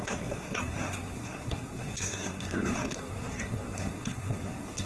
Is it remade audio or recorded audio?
remade